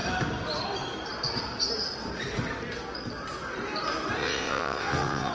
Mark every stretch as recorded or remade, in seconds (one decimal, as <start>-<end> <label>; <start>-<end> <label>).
0.0-4.2 recorded; 4.2-5.3 remade